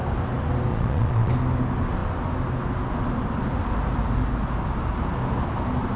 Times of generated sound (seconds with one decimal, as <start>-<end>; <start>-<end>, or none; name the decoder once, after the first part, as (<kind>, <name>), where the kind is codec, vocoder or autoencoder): 0.7-1.3 (vocoder, Vocos)